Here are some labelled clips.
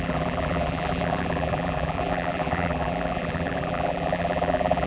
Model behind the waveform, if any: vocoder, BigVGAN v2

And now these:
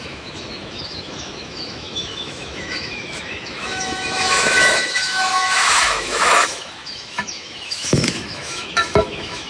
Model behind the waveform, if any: autoencoder, DAC-VAE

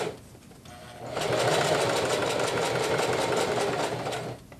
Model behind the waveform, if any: none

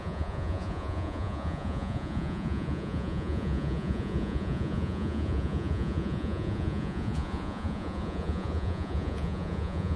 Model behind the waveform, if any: vocoder, Vocos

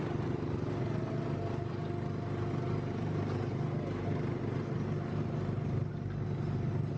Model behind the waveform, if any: none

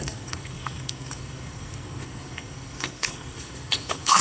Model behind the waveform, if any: codec, SNAC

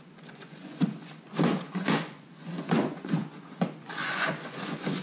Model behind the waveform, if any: vocoder, Vocos